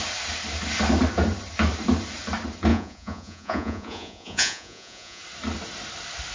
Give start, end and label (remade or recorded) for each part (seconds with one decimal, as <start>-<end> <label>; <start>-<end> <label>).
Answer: 0.0-2.7 recorded; 2.7-5.2 remade; 5.2-6.3 recorded